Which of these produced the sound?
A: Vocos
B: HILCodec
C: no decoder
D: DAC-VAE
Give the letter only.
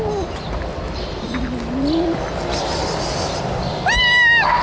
C